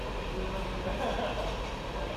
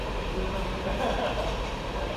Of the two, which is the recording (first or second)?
first